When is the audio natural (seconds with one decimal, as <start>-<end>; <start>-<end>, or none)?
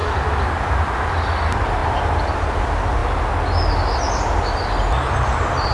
0.0-1.8; 2.6-5.7